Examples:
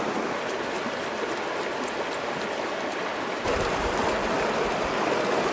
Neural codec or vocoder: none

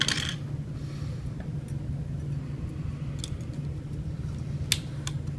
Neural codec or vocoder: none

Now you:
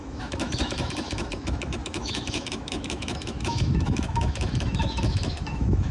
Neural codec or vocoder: autoencoder, DAC-VAE